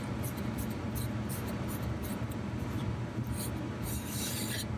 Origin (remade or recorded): remade